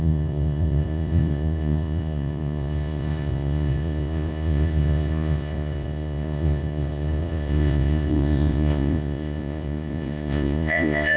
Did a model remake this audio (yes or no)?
yes